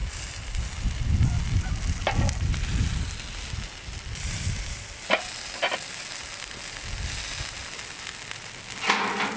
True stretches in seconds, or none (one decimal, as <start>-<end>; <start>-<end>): 0.0-9.4